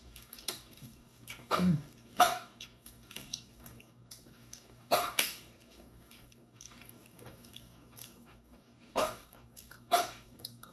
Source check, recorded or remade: remade